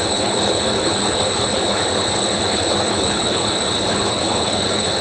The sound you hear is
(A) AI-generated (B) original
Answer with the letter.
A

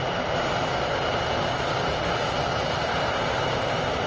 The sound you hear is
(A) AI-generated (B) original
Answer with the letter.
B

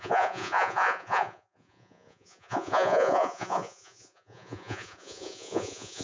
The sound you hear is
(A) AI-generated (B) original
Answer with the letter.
A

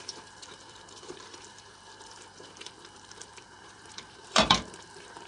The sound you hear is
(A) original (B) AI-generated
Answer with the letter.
B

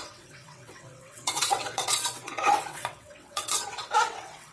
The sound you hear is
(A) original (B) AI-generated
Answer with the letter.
B